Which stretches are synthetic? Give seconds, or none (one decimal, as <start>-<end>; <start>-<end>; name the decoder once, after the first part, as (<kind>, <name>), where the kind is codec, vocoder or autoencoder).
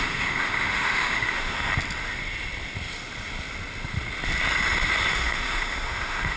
0.0-1.7 (autoencoder, DAC-VAE); 5.1-6.4